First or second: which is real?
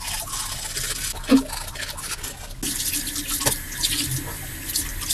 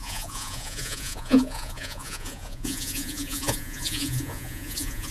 first